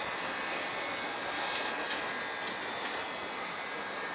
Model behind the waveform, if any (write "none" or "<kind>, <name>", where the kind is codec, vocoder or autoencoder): none